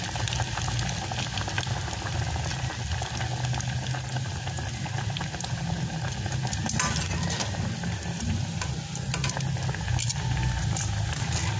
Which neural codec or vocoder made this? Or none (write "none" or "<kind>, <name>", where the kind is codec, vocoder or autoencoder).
none